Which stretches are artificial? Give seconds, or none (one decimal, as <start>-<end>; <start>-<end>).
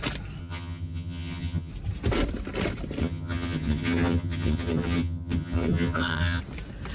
0.4-1.7; 3.0-6.4